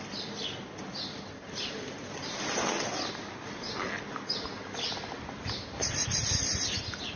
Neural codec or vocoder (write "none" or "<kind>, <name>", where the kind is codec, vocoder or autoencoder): none